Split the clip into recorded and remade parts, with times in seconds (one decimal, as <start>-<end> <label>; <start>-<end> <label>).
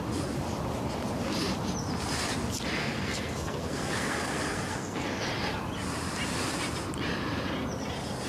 0.0-2.8 recorded; 2.8-5.2 remade; 5.2-8.3 recorded